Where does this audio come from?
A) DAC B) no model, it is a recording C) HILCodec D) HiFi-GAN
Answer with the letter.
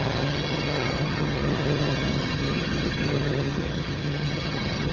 D